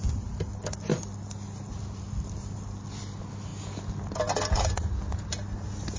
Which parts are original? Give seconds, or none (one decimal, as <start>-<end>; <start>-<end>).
0.0-6.0